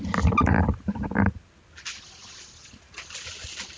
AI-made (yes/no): no